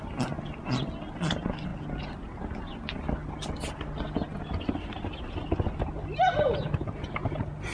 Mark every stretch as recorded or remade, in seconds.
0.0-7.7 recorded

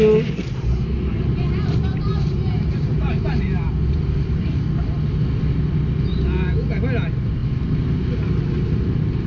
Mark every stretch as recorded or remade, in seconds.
0.0-0.4 recorded; 0.4-4.5 remade; 4.5-9.3 recorded

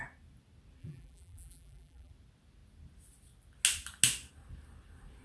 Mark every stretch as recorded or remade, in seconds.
0.0-0.8 recorded; 0.8-2.1 remade; 2.1-5.2 recorded

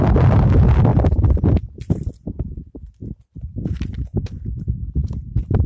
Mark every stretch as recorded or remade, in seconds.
0.0-0.9 remade; 0.9-1.9 recorded; 1.9-5.7 remade

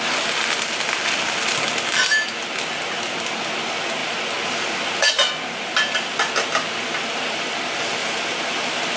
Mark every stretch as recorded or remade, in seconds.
0.0-8.0 recorded; 8.0-9.0 remade

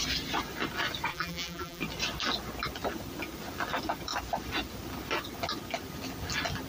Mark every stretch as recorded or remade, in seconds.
0.0-1.1 recorded; 1.1-1.8 remade; 1.8-6.7 recorded

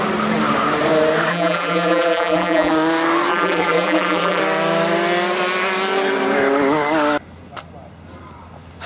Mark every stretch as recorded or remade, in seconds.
0.0-1.3 recorded; 1.3-2.7 remade; 2.7-3.3 recorded; 3.3-4.4 remade; 4.4-8.9 recorded

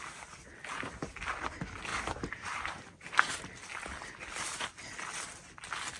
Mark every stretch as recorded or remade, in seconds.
0.0-1.9 recorded; 1.9-3.4 remade; 3.4-6.0 recorded